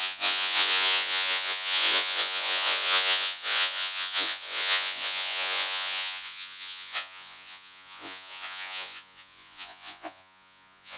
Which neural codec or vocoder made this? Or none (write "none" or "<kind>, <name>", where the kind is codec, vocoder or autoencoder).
vocoder, Vocos